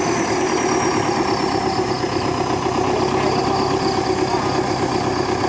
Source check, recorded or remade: recorded